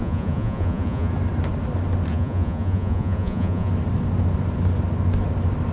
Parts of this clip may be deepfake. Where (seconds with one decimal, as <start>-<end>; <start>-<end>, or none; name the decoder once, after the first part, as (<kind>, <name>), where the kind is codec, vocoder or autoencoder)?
0.0-1.1 (vocoder, Vocos); 2.1-3.7